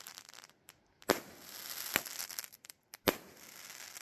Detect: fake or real real